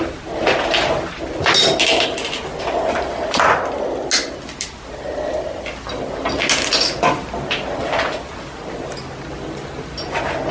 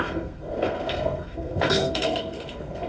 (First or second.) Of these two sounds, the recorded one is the first